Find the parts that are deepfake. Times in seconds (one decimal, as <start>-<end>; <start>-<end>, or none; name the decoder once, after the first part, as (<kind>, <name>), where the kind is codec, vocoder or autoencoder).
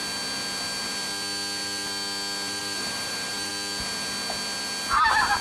2.6-3.5 (vocoder, BigVGAN v2)